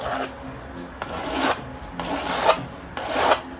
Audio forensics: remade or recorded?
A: recorded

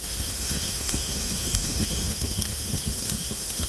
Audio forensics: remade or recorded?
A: remade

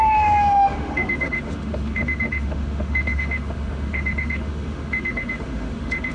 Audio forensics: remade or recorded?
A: remade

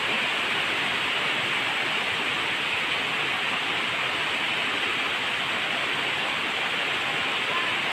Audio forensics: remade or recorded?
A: recorded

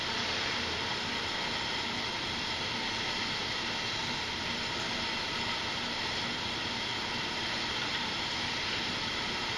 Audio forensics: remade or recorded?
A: recorded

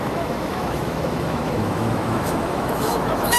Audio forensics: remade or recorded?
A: remade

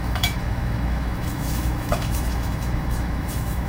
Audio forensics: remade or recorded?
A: remade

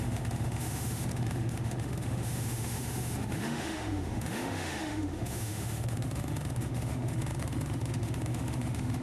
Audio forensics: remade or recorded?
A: remade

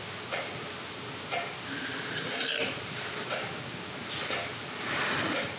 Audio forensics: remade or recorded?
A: recorded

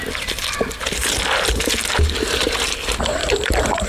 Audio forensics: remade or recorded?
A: recorded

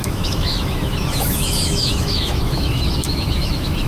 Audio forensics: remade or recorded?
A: remade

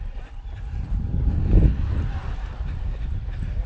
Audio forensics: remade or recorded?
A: recorded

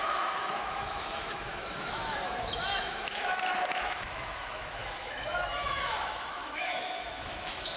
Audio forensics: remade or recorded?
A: remade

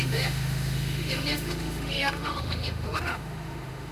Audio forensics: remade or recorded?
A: remade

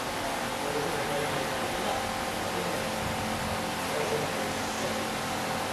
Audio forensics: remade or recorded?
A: recorded